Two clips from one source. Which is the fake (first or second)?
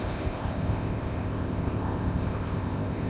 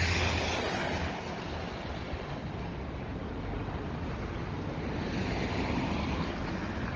first